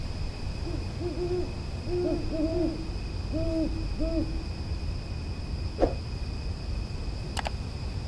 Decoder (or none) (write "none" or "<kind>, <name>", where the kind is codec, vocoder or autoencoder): none